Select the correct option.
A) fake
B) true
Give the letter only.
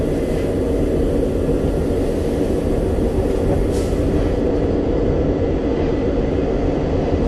B